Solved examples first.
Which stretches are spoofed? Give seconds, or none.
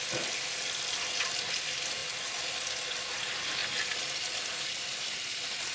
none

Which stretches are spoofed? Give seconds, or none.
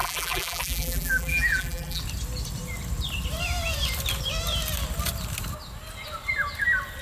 0.0-2.0 (vocoder, BigVGAN v2)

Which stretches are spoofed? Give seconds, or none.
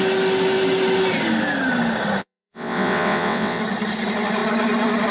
2.2-3.6 (vocoder, WaveNeXt)